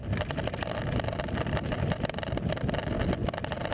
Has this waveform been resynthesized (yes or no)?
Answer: no